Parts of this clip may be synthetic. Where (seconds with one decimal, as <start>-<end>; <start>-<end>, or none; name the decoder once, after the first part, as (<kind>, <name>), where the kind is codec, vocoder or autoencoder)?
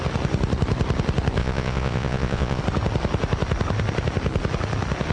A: 1.4-2.6 (vocoder, Vocos)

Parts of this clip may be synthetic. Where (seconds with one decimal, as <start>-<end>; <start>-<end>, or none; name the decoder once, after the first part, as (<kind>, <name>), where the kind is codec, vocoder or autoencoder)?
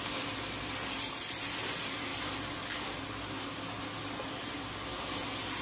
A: none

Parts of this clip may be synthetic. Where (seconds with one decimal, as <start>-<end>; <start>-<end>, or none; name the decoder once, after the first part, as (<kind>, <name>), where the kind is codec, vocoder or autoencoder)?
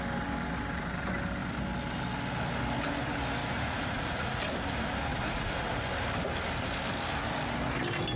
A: 3.4-4.4 (vocoder, Vocos); 5.1-5.7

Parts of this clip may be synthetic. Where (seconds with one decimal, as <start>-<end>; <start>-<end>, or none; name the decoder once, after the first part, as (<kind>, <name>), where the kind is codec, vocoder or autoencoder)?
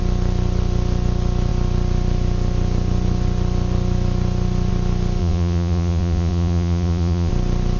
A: 5.2-7.3 (vocoder, Vocos)